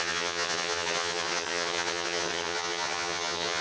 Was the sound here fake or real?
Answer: fake